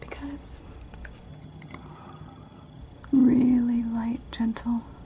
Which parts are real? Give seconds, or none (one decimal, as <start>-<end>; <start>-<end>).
0.0-1.3; 2.8-5.1